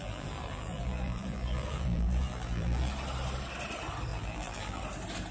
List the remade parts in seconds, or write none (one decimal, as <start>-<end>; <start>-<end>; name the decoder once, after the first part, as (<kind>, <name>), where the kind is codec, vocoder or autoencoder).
0.0-2.9 (vocoder, BigVGAN v2); 4.1-4.8